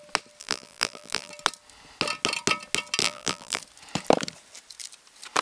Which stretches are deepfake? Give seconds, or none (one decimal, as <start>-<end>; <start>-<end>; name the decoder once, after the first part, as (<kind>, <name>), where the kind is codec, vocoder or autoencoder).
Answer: 0.4-1.3 (vocoder, BigVGAN v2); 3.0-3.6